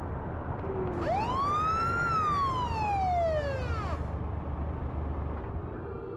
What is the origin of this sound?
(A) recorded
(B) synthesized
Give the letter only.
A